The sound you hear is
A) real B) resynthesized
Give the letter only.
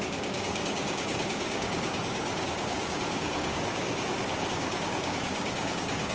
B